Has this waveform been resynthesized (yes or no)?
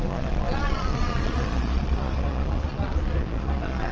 yes